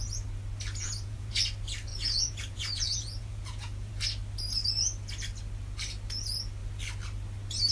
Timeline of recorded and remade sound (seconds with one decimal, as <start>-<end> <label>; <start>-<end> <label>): 0.0-0.8 recorded; 0.8-1.3 remade; 1.3-1.9 recorded; 1.9-3.9 remade; 3.9-7.7 recorded